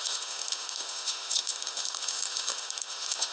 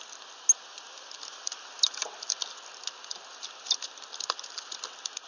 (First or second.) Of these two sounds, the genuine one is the second